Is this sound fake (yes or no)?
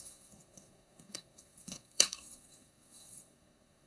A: yes